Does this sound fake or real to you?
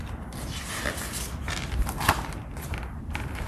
real